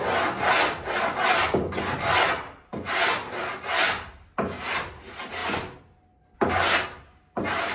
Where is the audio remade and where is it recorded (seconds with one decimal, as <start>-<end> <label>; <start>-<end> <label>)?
0.0-7.7 recorded